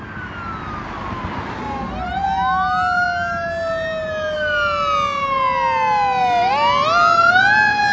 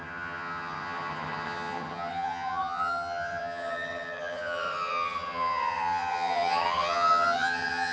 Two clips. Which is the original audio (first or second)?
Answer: first